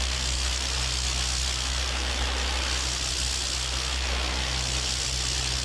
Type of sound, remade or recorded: recorded